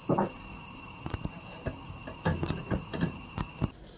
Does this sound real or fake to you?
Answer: fake